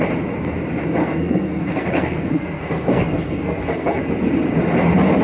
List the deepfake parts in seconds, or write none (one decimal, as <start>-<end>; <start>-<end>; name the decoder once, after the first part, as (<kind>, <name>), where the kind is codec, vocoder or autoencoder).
1.0-4.1 (codec, SNAC)